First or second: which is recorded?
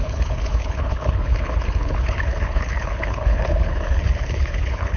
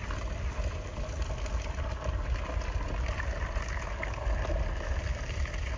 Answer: second